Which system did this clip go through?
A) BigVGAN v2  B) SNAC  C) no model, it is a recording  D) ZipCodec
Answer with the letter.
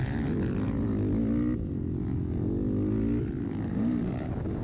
C